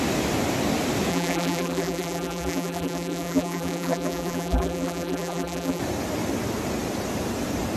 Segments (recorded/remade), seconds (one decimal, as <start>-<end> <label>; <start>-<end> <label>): 0.0-1.1 recorded; 1.1-5.8 remade; 5.8-7.8 recorded